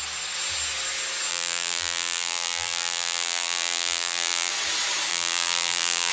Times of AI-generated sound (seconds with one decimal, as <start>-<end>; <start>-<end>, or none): 1.3-4.5; 5.1-6.1